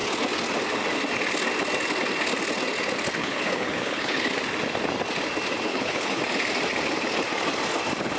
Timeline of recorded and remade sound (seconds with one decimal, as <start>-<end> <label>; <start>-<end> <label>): 0.0-3.2 recorded; 3.2-4.3 remade; 4.3-5.7 recorded; 5.7-6.2 remade; 6.2-8.2 recorded